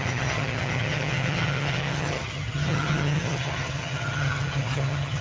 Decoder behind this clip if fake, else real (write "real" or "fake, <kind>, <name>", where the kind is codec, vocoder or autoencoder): fake, vocoder, HiFi-GAN